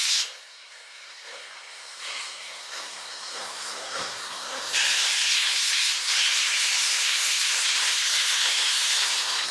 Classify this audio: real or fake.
fake